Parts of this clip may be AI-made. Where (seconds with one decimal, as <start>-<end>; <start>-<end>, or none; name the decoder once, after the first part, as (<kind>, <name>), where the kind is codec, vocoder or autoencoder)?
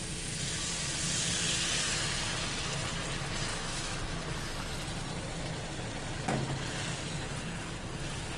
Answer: 3.5-4.0 (autoencoder, DAC-VAE)